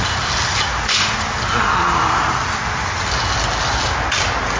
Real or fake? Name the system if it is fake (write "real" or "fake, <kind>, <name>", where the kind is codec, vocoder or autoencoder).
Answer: real